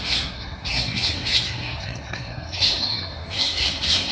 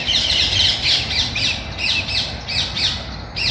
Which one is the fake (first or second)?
first